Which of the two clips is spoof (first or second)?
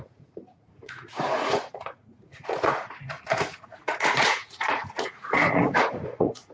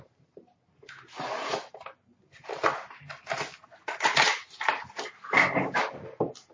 first